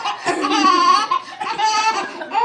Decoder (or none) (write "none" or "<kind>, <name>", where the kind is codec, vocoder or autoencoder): none